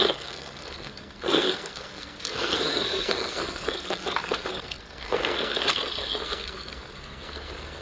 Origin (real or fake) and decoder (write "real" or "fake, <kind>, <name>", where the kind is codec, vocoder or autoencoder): fake, codec, SNAC